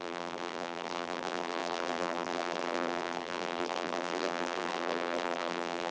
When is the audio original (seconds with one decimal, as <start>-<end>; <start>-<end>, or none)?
none